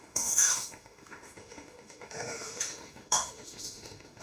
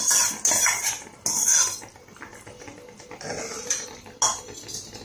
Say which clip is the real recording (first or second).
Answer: second